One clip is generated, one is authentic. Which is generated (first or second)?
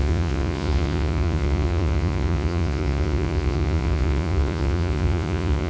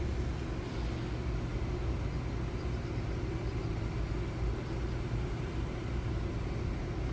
first